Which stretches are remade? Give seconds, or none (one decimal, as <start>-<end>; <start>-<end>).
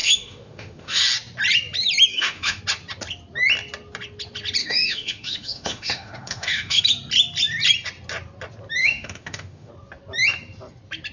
0.0-1.0; 2.1-2.6; 4.6-6.8; 8.8-9.7